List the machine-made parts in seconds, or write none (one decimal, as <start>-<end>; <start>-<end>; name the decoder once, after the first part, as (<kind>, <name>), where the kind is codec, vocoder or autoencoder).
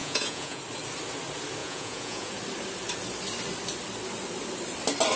0.0-0.6 (vocoder, Vocos); 1.6-2.3